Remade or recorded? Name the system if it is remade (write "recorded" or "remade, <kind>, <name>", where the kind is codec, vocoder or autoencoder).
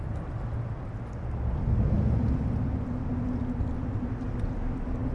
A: recorded